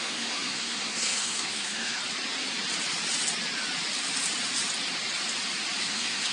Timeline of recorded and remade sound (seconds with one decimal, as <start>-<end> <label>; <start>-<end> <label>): 0.0-2.0 remade; 2.0-5.8 recorded; 5.8-6.3 remade